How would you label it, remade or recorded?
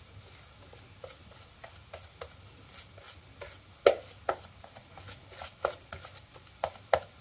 recorded